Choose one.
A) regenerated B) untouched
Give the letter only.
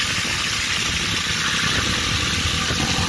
B